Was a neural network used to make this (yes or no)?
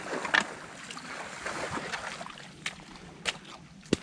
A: no